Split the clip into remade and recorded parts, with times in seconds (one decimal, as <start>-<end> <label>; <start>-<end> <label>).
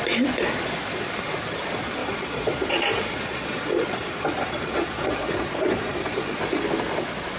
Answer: 0.0-2.0 recorded; 2.0-6.4 remade; 6.4-7.4 recorded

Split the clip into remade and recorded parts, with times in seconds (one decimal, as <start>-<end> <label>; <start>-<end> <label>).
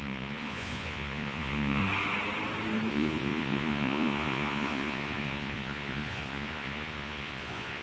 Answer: 0.0-1.8 remade; 1.8-2.9 recorded; 2.9-7.8 remade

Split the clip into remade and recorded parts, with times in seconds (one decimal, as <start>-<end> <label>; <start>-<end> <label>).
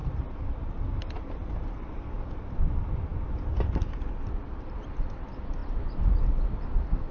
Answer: 0.0-1.1 remade; 1.1-7.1 recorded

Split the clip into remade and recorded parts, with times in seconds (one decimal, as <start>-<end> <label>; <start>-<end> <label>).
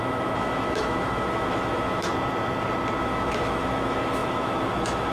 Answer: 0.0-2.1 remade; 2.1-3.0 recorded; 3.0-5.1 remade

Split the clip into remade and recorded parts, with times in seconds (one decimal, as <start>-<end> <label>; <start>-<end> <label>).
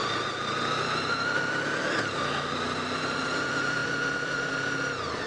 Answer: 0.0-5.3 recorded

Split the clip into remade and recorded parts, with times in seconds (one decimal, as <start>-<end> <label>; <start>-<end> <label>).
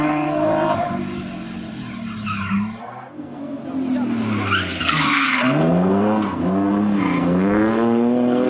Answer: 0.0-0.5 remade; 0.5-2.8 recorded; 2.8-3.6 remade; 3.6-4.8 recorded; 4.8-8.5 remade